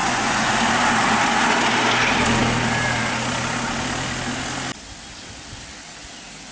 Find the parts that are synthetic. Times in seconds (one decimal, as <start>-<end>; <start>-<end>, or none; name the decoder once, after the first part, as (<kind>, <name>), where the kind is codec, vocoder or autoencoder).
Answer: 0.0-0.5 (vocoder, Vocos)